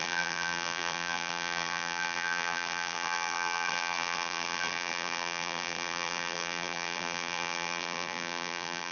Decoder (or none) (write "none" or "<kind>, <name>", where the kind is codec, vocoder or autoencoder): vocoder, BigVGAN v2